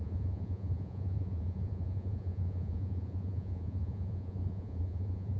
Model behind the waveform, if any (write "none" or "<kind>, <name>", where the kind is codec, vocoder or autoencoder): vocoder, Vocos